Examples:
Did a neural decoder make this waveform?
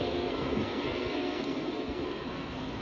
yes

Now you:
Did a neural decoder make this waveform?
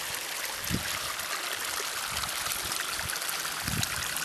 no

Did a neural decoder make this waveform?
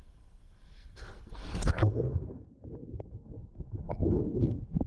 yes